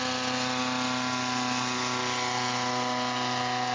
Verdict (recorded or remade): recorded